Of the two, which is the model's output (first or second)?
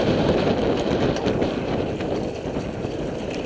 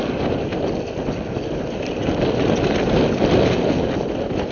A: first